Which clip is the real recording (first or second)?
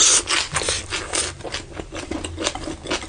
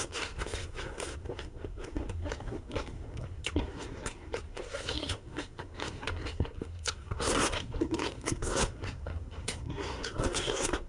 first